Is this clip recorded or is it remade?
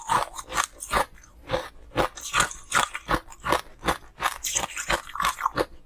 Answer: recorded